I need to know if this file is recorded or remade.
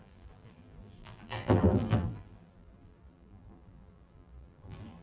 remade